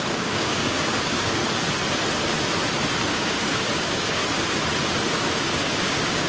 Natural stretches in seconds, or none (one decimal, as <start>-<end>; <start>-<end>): 1.4-3.1; 4.2-5.1